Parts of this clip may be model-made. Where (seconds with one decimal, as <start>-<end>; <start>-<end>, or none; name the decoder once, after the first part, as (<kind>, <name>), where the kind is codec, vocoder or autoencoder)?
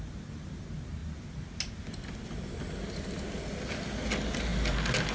none